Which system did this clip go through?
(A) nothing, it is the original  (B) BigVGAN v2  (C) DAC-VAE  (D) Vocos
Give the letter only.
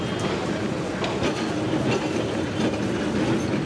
A